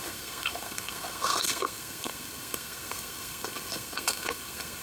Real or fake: fake